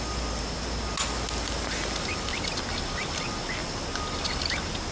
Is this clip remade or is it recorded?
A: recorded